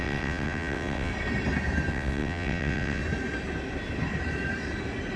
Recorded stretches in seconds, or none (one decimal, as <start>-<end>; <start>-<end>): 1.1-1.9; 3.0-5.2